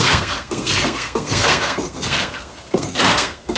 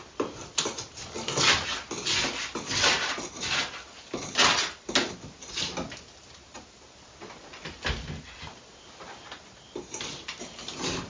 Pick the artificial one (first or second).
first